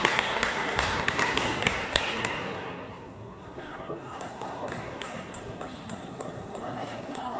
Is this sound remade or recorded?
remade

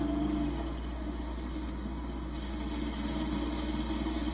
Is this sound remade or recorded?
recorded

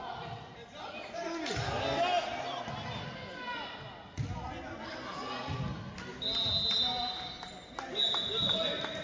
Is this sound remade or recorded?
recorded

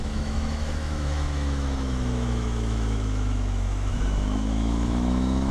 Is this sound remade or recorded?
remade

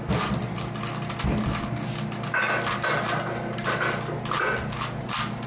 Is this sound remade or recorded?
recorded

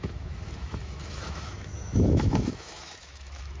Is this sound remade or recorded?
remade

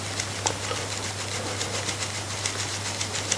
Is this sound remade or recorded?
recorded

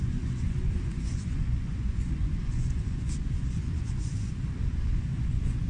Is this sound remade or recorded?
remade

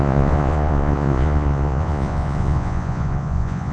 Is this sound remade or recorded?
remade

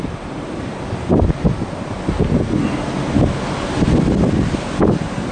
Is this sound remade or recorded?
recorded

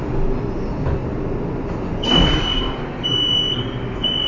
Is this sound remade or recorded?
recorded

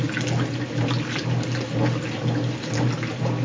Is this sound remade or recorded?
recorded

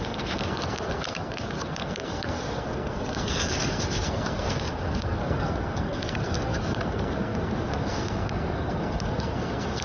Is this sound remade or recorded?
remade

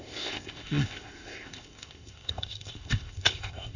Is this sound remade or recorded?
remade